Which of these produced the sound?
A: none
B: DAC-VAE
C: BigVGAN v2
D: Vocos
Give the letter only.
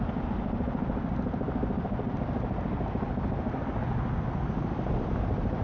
A